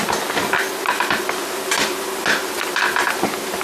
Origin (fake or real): real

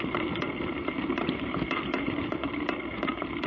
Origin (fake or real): fake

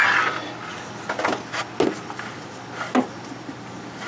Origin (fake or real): real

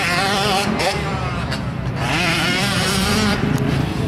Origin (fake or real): fake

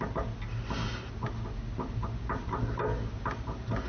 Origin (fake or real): real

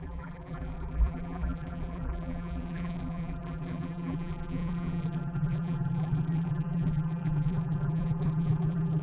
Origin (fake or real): fake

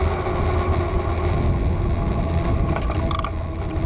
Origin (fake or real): real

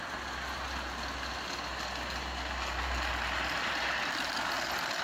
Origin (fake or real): real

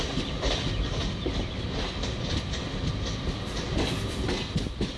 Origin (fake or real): real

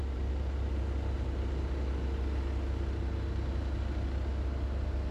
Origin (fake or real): real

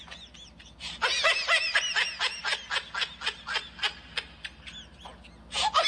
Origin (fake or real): real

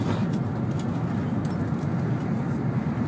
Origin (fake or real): real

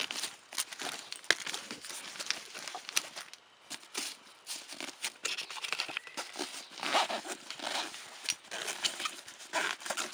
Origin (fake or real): real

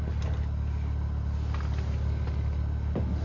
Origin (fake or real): real